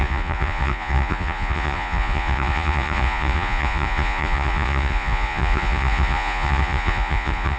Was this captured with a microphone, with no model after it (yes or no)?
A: no